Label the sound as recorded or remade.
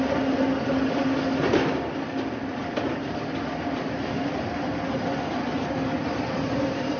recorded